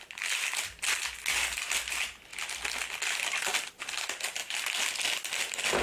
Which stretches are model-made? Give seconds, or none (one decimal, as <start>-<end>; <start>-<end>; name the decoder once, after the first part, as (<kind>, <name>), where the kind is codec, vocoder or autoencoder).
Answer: none